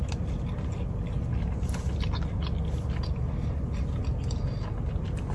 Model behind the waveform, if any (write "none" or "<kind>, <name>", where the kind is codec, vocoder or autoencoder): none